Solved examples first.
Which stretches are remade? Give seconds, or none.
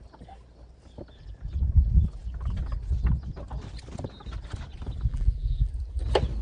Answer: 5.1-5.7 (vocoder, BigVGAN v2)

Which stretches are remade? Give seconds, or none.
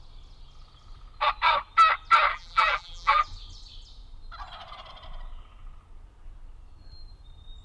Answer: 2.3-3.2 (vocoder, BigVGAN v2)